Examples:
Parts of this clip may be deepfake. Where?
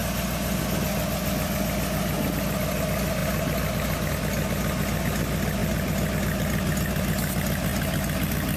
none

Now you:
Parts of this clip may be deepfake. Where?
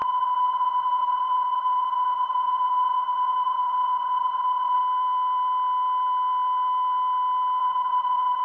0.0-4.8 (vocoder, Vocos); 7.6-8.4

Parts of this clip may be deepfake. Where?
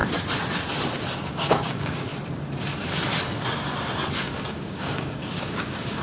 1.3-2.1 (codec, DAC); 4.2-6.0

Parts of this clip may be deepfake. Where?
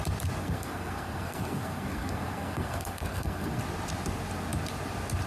0.4-3.6 (codec, SNAC)